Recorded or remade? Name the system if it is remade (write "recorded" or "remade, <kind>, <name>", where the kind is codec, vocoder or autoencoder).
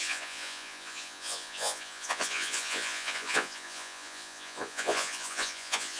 remade, vocoder, Vocos